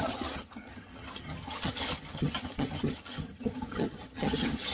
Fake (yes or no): yes